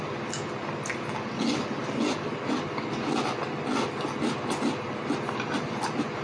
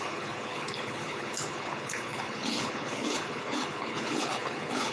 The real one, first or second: first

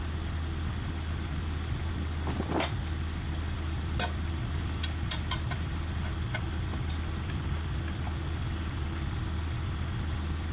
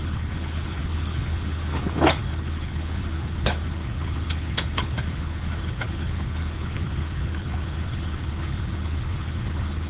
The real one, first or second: first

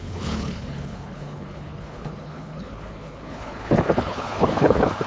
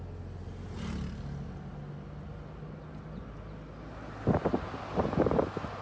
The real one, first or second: second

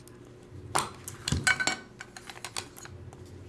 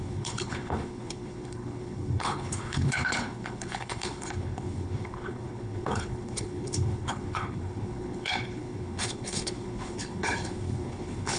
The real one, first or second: first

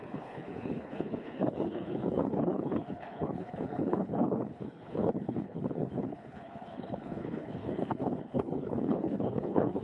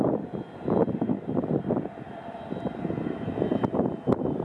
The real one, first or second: second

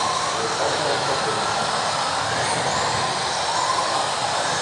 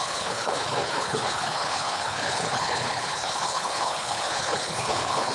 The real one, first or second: first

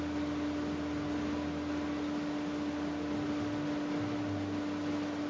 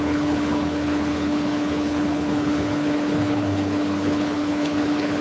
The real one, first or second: first